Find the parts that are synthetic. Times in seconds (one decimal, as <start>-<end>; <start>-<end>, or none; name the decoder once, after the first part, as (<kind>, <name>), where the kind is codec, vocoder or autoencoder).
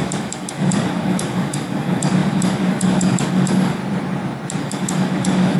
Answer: 0.0-3.8 (codec, DAC); 4.6-5.6